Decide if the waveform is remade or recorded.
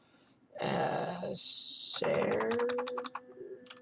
recorded